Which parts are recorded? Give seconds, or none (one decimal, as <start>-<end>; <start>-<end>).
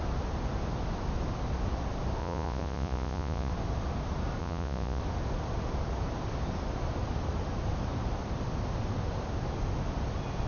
0.0-2.2; 3.5-4.4; 5.0-10.5